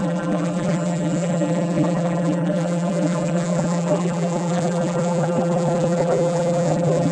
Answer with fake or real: fake